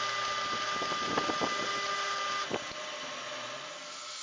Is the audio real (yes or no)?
yes